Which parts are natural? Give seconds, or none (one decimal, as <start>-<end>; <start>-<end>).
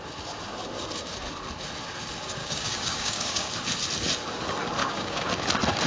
0.0-2.4; 3.5-4.8; 5.3-5.9